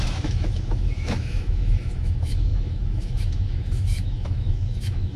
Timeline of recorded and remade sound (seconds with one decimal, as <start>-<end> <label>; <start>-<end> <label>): 0.0-5.2 remade